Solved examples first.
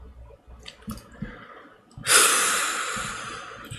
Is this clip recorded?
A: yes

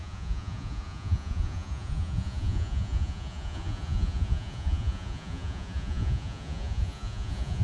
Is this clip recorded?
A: no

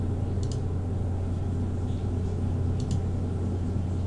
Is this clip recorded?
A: yes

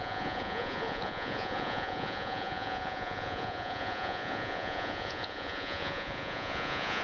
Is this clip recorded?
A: no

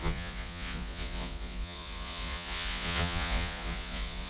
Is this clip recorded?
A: no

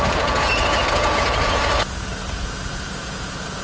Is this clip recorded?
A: no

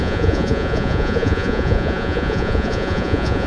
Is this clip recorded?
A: no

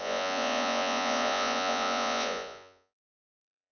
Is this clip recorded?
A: no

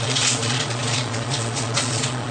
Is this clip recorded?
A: no